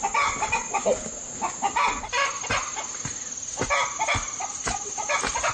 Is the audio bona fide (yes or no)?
yes